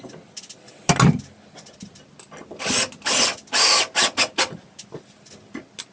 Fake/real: real